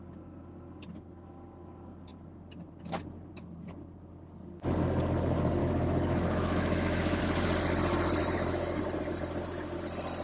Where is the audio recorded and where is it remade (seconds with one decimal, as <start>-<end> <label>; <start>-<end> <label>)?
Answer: 0.0-5.6 recorded; 5.6-7.2 remade; 7.2-8.2 recorded; 8.2-8.8 remade; 8.8-10.2 recorded